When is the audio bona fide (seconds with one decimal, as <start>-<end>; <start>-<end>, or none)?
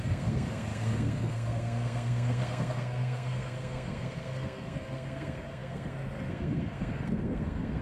none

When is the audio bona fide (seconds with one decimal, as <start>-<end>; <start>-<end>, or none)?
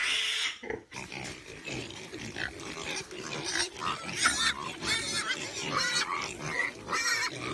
0.0-7.5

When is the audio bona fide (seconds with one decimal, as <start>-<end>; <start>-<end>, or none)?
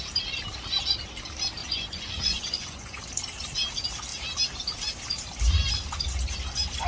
0.0-1.6; 3.0-6.9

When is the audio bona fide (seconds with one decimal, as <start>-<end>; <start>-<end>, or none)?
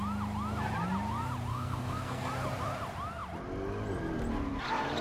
0.0-1.5; 2.3-5.0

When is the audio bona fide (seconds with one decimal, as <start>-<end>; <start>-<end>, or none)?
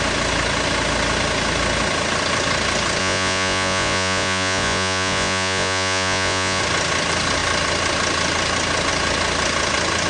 0.0-3.0; 6.6-10.1